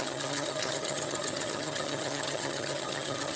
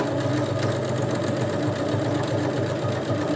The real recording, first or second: second